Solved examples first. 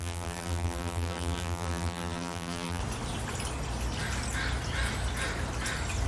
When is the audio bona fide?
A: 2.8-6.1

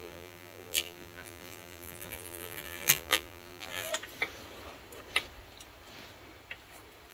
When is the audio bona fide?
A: 3.9-7.1

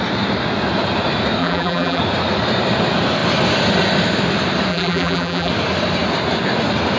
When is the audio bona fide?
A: 0.0-1.4; 2.0-4.7; 5.5-7.0

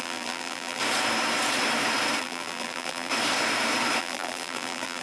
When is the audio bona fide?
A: 0.8-2.2; 3.1-4.0

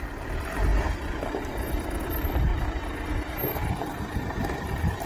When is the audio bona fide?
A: 0.7-2.0; 2.5-3.8